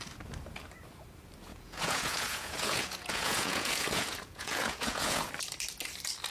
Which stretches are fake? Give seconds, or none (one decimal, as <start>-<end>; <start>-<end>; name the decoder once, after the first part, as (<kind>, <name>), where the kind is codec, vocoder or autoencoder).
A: 1.5-5.3 (vocoder, Vocos)